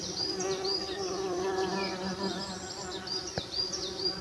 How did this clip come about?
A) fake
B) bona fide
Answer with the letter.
B